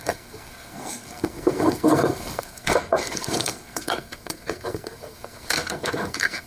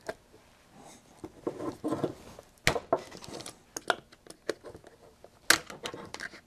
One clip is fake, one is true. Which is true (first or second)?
second